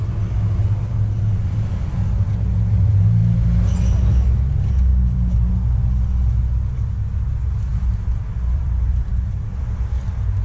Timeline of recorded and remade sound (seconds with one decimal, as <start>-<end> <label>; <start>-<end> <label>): 0.0-4.9 recorded; 4.9-5.5 remade; 5.5-7.7 recorded; 7.7-9.6 remade; 9.6-10.4 recorded